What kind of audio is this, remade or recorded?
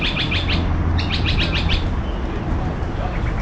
recorded